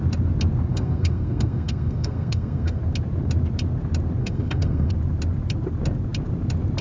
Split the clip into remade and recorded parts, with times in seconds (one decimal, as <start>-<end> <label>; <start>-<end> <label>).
0.0-0.7 recorded; 0.7-2.8 remade; 2.8-4.2 recorded; 4.2-4.9 remade; 4.9-6.8 recorded